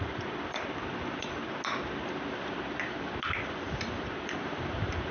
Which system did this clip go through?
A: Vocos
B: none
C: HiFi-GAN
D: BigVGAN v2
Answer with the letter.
B